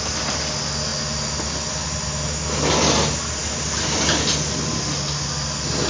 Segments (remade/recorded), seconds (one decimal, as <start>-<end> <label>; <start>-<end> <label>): 0.0-5.9 recorded